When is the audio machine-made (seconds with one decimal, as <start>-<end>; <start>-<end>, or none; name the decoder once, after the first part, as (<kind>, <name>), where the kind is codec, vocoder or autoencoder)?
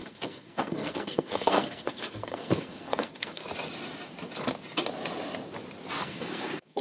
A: 0.0-3.4 (codec, SNAC); 6.0-6.8